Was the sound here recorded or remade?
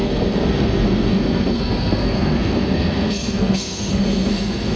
remade